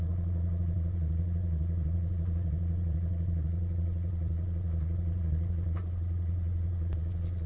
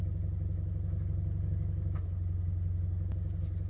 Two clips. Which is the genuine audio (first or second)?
second